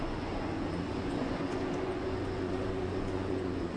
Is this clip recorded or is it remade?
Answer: remade